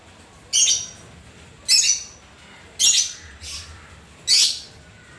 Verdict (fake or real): real